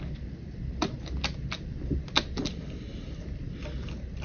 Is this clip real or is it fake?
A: real